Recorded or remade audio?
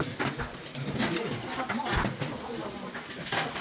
recorded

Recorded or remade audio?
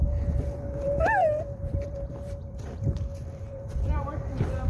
remade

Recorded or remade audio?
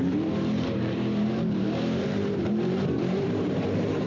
remade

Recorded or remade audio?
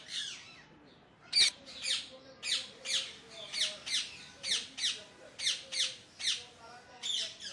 recorded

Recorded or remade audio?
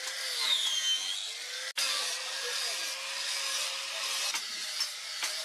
recorded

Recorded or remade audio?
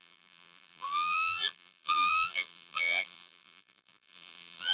remade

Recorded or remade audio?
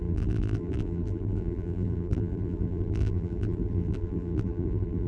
remade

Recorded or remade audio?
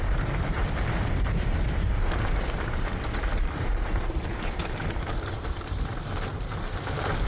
remade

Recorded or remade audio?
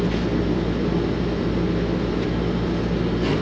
recorded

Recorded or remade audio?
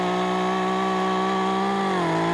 recorded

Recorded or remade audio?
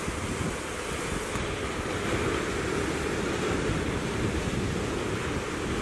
recorded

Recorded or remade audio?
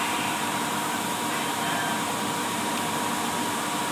remade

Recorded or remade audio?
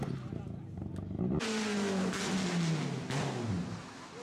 recorded